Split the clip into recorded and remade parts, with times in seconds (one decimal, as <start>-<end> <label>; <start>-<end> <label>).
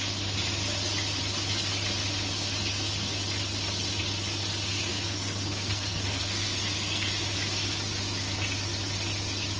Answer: 0.0-4.9 recorded; 4.9-7.2 remade; 7.2-9.6 recorded